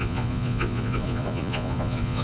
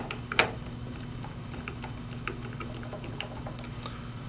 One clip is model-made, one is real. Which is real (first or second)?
second